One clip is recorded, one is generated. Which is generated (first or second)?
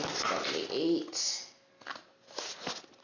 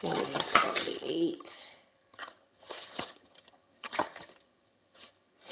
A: second